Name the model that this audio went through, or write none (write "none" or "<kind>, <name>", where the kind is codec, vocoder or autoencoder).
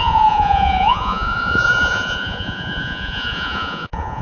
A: vocoder, Vocos